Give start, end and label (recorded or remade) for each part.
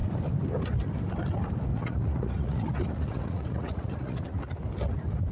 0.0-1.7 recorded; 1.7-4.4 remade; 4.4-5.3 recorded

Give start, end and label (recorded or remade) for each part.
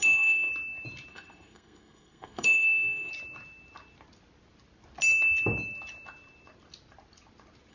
0.0-0.5 remade; 0.5-1.1 recorded; 1.1-3.1 remade; 3.1-7.7 recorded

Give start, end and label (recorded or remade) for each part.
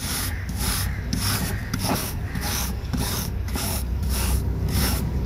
0.0-5.3 remade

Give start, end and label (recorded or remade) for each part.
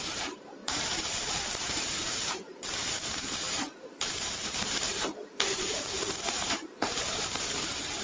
0.0-8.0 remade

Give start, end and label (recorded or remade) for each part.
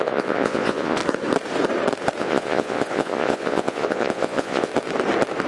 0.0-1.0 remade; 1.0-2.2 recorded; 2.2-4.7 remade; 4.7-5.5 recorded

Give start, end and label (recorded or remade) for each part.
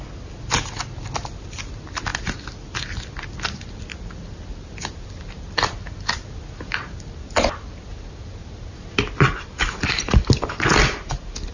0.0-11.5 recorded